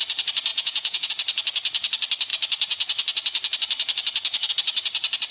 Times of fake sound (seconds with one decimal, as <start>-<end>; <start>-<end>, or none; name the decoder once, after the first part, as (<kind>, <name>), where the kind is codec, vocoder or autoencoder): 0.5-1.1 (vocoder, Vocos)